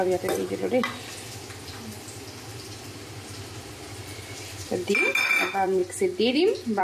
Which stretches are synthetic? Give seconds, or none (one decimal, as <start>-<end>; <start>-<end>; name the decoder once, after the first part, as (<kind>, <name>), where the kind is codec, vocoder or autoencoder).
0.0-0.4 (vocoder, BigVGAN v2); 1.7-5.8